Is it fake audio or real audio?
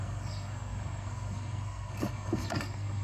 fake